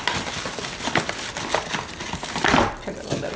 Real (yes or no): yes